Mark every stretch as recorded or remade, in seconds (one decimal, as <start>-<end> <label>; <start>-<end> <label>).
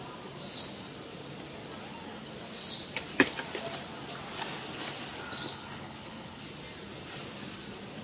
0.0-5.5 recorded; 5.5-6.4 remade; 6.4-8.0 recorded